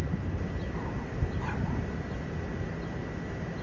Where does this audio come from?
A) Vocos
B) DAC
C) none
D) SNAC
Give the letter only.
C